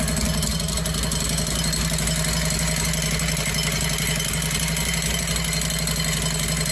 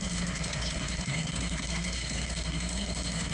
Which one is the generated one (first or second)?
second